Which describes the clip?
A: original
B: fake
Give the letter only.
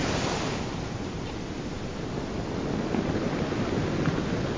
A